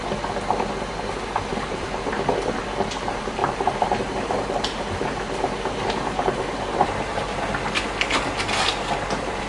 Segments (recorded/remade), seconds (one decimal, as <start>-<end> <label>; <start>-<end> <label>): 0.0-1.5 recorded; 1.5-2.1 remade; 2.1-3.4 recorded; 3.4-7.5 remade; 7.5-9.5 recorded